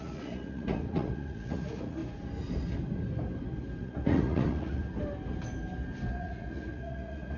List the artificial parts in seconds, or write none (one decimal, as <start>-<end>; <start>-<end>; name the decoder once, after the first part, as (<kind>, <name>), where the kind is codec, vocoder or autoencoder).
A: 0.0-2.0 (vocoder, Vocos); 3.8-4.8; 6.1-7.4